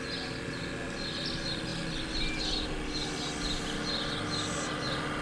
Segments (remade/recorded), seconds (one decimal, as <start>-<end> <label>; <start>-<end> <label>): 0.0-5.2 recorded